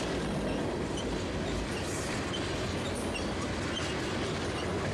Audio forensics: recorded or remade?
recorded